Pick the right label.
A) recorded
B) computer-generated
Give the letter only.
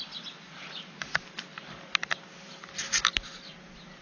A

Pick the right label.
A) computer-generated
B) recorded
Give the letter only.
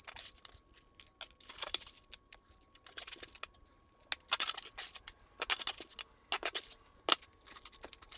B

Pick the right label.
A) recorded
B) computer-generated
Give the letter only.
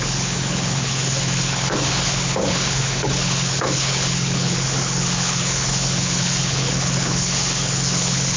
B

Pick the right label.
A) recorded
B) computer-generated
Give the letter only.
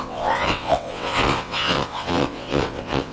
B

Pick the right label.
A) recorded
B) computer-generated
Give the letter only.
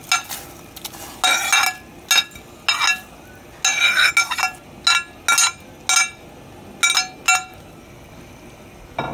A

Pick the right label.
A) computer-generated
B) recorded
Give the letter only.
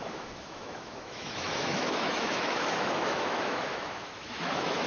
A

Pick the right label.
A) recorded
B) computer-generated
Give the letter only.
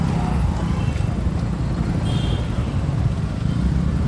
A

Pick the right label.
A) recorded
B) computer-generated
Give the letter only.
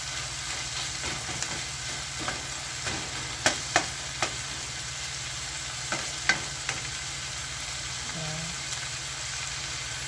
A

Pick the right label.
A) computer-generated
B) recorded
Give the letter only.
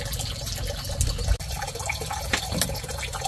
B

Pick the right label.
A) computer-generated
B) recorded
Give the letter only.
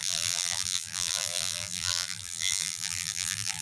A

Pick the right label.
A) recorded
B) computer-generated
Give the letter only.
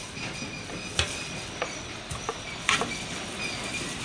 A